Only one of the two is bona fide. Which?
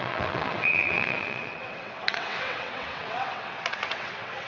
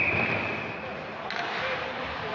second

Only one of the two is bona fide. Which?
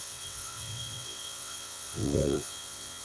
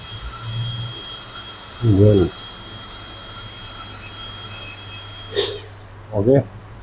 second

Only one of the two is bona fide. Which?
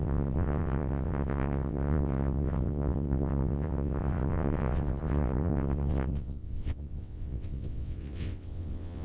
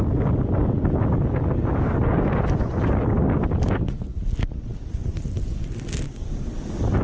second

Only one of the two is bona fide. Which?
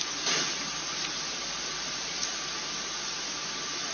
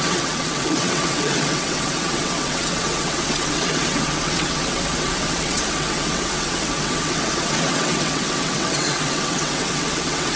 first